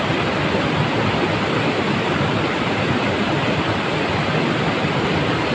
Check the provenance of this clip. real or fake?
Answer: real